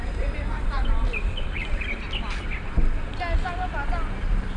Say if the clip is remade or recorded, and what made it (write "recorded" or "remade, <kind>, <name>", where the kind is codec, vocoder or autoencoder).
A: recorded